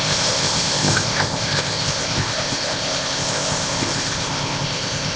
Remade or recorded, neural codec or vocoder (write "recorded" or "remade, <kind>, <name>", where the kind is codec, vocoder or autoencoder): remade, codec, ZipCodec